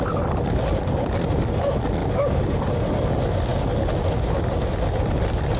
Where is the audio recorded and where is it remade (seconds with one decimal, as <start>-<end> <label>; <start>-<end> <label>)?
0.0-2.0 recorded; 2.0-2.7 remade; 2.7-5.6 recorded